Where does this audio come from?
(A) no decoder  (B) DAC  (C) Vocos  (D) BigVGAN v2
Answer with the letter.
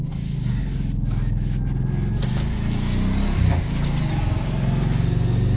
A